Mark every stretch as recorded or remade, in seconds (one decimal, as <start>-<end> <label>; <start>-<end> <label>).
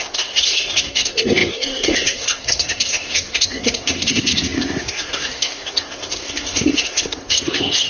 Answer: 0.0-7.9 remade